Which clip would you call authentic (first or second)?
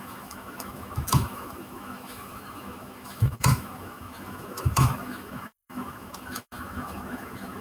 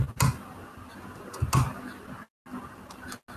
second